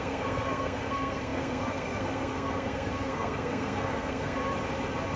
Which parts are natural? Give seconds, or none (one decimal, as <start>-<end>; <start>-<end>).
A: 4.4-5.2